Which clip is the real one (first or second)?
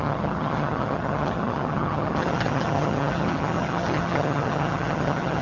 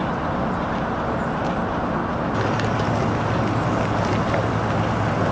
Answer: second